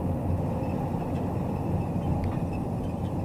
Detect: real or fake real